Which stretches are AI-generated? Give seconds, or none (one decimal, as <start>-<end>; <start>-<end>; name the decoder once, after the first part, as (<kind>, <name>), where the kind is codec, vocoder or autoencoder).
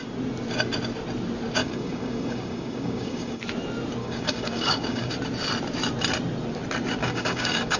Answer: 1.6-3.4 (codec, DAC); 4.0-5.1; 7.0-7.8